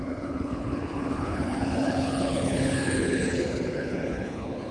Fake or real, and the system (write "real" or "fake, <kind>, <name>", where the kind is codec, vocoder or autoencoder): fake, codec, HILCodec